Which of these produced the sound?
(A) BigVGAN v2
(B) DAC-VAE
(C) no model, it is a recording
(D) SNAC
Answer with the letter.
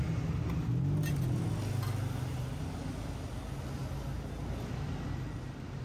C